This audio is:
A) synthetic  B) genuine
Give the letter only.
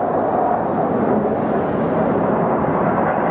B